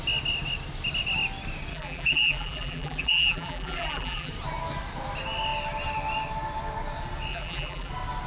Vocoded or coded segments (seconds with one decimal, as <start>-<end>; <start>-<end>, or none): 1.7-4.3; 7.3-7.9